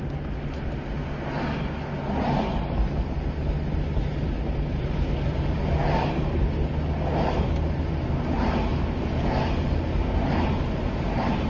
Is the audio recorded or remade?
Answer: recorded